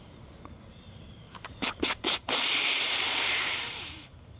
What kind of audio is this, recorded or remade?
remade